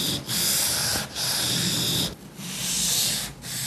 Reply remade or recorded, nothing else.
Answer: recorded